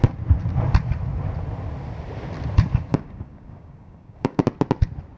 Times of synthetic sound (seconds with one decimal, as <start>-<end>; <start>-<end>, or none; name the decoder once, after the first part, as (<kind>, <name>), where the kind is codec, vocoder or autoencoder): 2.9-4.4 (codec, DAC)